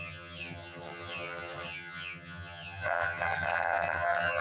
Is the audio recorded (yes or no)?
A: no